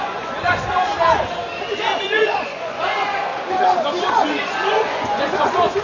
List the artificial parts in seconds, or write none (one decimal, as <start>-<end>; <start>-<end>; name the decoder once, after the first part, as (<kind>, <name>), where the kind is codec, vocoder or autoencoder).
0.0-0.9 (vocoder, Vocos); 2.0-3.3; 4.0-5.8